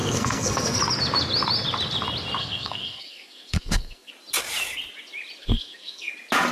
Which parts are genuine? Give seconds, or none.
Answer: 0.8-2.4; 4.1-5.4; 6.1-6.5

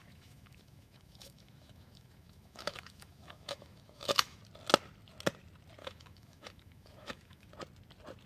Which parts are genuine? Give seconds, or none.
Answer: 4.4-5.8; 7.5-8.3